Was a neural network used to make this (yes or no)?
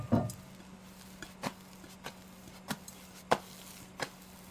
no